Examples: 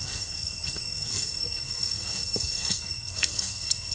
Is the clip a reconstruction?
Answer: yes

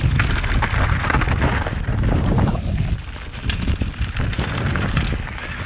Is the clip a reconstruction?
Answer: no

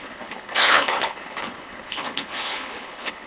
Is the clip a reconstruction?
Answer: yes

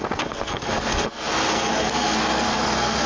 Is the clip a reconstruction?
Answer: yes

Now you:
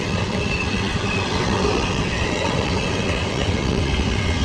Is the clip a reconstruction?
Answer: yes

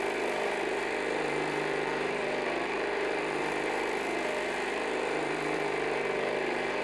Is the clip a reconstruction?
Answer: yes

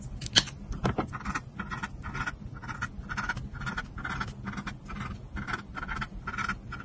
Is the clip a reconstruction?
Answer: no